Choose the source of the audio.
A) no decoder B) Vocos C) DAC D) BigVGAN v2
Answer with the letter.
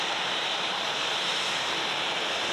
D